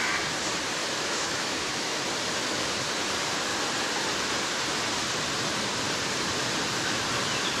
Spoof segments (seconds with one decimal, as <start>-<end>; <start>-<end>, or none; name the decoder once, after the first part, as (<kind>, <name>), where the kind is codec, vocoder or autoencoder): 0.8-2.1 (autoencoder, DAC-VAE)